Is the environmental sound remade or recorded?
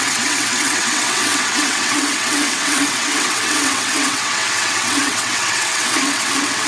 remade